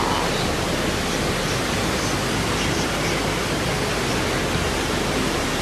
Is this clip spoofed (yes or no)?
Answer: no